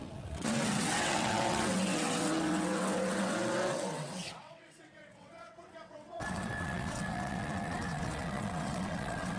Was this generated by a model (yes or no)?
yes